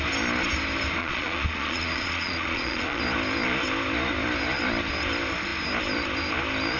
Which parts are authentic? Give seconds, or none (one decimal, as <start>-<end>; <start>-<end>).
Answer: 0.0-1.0; 3.0-6.8